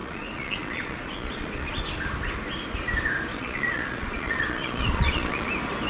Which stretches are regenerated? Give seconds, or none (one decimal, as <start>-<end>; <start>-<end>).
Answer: 0.0-1.8; 3.3-5.5